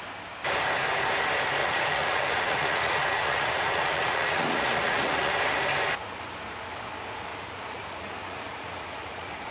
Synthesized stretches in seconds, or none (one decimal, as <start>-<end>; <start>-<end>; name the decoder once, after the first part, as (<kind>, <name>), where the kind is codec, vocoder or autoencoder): 1.6-5.3 (vocoder, Vocos); 7.3-9.5